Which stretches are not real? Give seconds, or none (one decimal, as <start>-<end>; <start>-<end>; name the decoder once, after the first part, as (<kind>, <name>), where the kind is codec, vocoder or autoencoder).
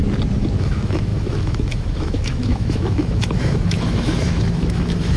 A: 0.6-5.2 (autoencoder, DAC-VAE)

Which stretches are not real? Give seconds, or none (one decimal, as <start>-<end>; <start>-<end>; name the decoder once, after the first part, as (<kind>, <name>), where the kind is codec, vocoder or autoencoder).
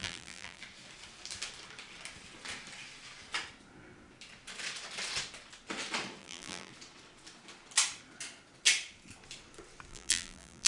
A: 0.0-0.6 (vocoder, BigVGAN v2); 6.2-6.7; 9.9-10.7